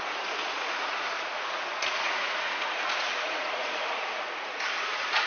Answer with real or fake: fake